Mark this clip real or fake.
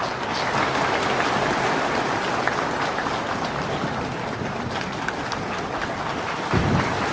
real